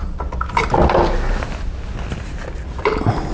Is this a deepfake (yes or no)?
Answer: no